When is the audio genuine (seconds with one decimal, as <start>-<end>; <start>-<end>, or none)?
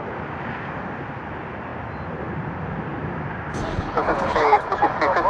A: 0.0-3.7; 4.6-5.3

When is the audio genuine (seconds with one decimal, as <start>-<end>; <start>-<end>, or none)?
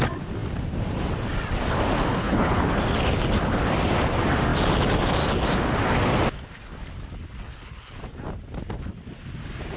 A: 0.0-2.1; 2.7-7.4; 8.0-9.8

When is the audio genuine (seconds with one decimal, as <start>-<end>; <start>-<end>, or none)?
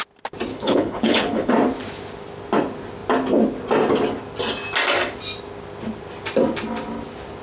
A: 0.0-0.5; 1.5-7.4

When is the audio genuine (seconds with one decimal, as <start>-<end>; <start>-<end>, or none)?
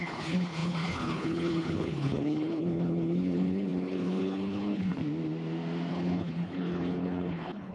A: 5.0-5.9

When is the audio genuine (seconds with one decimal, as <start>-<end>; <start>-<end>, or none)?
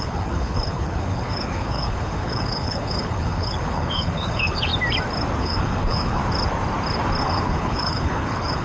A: 4.7-5.4; 6.2-7.2